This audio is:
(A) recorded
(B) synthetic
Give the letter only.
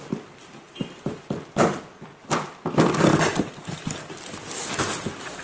A